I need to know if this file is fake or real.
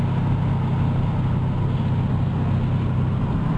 real